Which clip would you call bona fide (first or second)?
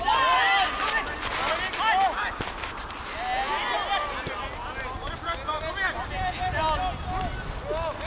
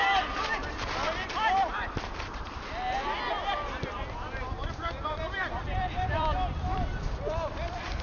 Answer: first